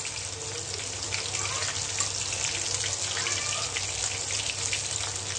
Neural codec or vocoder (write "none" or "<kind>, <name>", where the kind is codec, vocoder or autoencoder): none